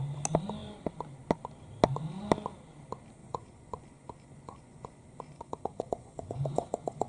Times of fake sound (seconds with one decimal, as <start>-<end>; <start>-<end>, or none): 3.2-7.1